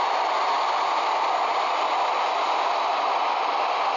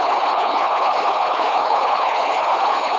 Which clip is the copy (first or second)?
second